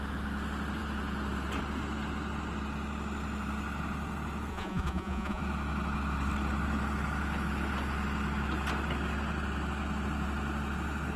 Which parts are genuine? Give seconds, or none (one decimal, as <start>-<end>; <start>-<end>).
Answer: 0.0-4.5; 5.4-11.2